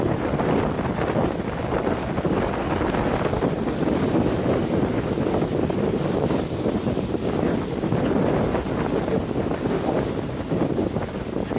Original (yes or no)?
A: yes